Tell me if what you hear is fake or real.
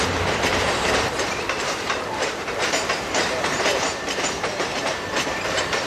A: fake